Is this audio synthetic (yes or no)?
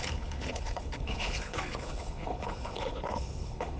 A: yes